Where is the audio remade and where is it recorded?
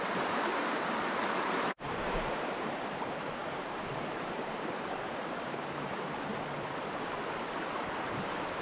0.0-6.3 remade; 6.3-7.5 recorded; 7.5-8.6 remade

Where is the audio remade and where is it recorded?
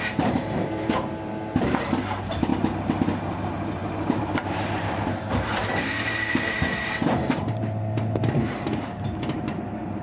0.0-2.5 remade; 2.5-3.2 recorded; 3.2-10.0 remade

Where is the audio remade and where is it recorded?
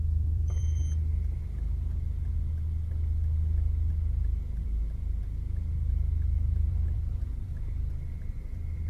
0.0-0.8 remade; 0.8-5.9 recorded; 5.9-7.5 remade; 7.5-8.1 recorded; 8.1-8.9 remade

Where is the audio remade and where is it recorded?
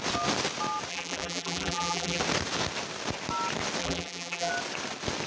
0.0-0.9 recorded; 0.9-2.2 remade; 2.2-3.8 recorded; 3.8-4.5 remade; 4.5-5.3 recorded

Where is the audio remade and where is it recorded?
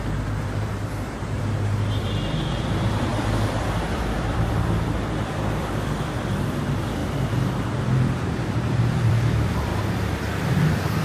0.0-9.7 remade; 9.7-10.3 recorded; 10.3-11.0 remade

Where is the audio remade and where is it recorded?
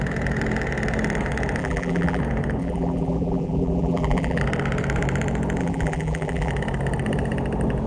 0.0-1.6 recorded; 1.6-2.2 remade; 2.2-2.6 recorded; 2.6-4.4 remade; 4.4-5.6 recorded; 5.6-6.5 remade; 6.5-7.9 recorded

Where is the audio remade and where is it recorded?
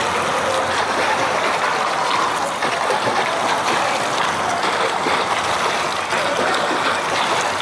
0.0-7.6 recorded